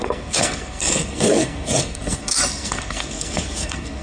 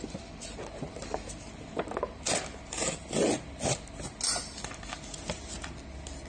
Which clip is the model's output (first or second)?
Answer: first